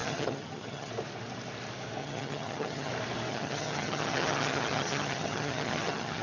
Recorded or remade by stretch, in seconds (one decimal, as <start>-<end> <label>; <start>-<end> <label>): 0.0-0.9 remade; 0.9-2.0 recorded; 2.0-2.9 remade; 2.9-3.3 recorded; 3.3-6.2 remade